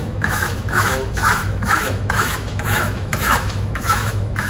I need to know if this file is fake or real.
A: fake